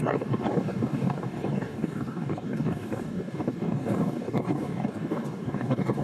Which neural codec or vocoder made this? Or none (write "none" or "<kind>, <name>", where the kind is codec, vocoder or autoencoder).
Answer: codec, DAC